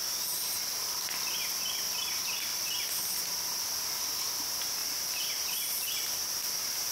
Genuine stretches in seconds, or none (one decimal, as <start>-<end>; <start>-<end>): 0.0-2.5; 3.2-4.8